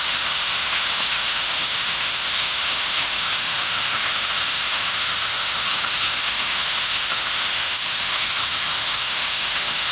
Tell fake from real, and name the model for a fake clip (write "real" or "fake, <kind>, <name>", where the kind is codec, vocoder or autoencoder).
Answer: fake, autoencoder, DAC-VAE